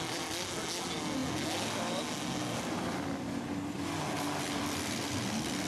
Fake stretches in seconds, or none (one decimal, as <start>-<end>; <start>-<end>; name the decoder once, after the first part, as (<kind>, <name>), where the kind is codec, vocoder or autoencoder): none